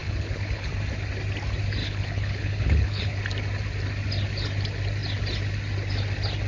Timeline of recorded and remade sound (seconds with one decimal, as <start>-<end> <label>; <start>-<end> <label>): 0.0-0.7 remade; 0.7-1.8 recorded; 1.8-3.2 remade; 3.2-6.5 recorded